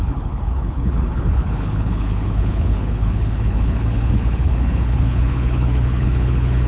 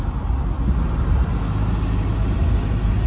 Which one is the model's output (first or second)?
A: first